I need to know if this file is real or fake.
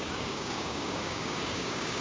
fake